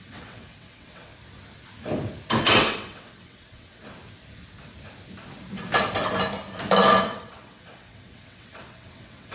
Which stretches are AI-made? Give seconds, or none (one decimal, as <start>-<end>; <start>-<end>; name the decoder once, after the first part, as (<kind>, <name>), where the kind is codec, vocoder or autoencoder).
0.0-1.1 (vocoder, WaveNeXt); 2.5-3.8; 7.0-9.3